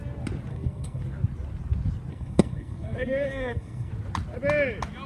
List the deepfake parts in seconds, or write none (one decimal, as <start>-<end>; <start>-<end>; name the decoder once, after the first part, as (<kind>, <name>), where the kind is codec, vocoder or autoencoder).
0.5-1.0 (codec, SNAC); 2.1-3.9